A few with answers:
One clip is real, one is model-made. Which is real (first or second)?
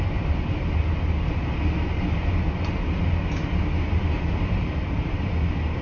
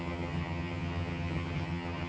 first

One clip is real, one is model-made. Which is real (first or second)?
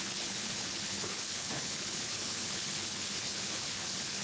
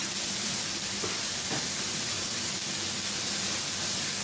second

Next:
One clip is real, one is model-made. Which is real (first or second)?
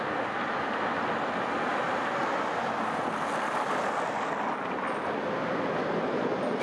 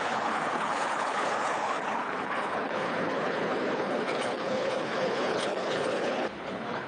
first